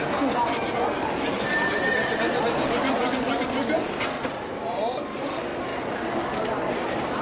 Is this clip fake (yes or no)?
no